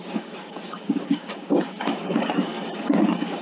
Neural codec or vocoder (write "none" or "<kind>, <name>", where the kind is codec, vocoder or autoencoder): codec, DAC